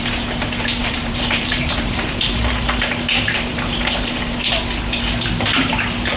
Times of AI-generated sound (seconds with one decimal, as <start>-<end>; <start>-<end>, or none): 0.8-4.5